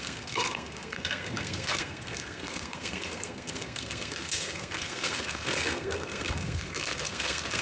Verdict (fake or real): fake